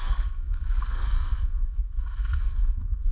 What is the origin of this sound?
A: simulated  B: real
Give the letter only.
A